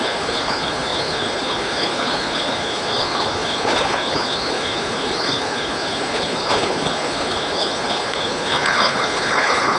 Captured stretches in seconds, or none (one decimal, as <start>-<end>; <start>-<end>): none